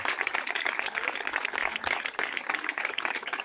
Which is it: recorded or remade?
remade